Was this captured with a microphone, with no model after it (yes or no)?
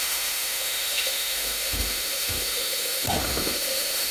no